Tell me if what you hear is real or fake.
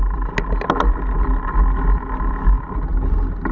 real